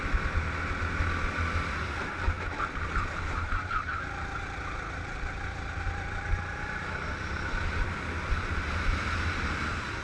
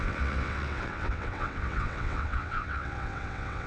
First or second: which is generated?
second